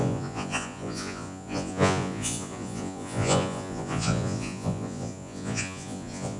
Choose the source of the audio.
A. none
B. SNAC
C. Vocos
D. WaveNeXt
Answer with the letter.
C